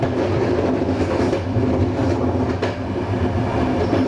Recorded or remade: recorded